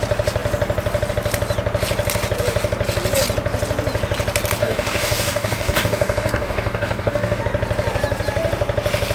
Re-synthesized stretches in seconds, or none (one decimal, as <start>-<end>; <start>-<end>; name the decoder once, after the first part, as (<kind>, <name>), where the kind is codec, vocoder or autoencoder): 4.6-7.4 (codec, DAC)